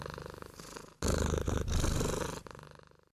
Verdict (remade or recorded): recorded